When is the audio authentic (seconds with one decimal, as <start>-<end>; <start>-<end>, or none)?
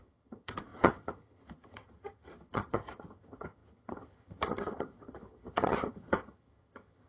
none